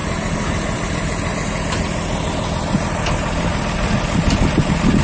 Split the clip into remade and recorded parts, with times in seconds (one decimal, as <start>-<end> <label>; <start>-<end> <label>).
0.0-5.0 recorded